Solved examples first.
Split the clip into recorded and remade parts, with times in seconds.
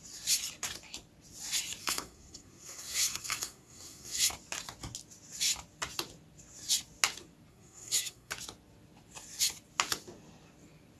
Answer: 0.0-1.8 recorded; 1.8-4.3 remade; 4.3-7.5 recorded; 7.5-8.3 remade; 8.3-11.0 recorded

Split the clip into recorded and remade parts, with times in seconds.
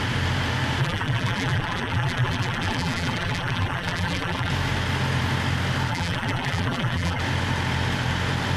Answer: 0.0-0.8 recorded; 0.8-4.5 remade; 4.5-5.9 recorded; 5.9-7.2 remade; 7.2-8.6 recorded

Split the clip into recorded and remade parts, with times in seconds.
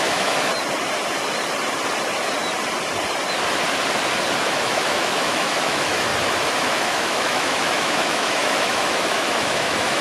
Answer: 0.0-0.5 remade; 0.5-4.4 recorded; 4.4-6.1 remade; 6.1-6.6 recorded; 6.6-10.0 remade